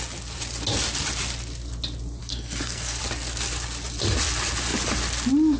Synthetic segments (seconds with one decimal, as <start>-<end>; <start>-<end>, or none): 2.2-3.0